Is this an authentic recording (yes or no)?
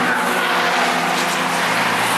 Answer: yes